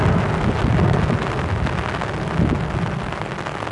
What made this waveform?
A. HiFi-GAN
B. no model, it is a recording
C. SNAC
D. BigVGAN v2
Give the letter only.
B